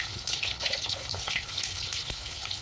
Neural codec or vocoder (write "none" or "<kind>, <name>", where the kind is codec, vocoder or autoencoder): codec, HILCodec